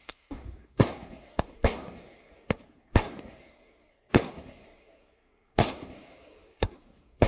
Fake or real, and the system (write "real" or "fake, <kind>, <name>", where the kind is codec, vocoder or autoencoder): fake, codec, SNAC